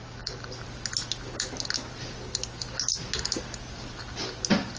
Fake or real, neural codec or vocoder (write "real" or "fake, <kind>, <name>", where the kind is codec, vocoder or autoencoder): real